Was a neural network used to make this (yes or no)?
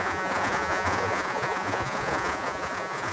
yes